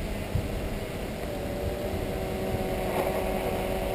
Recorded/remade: recorded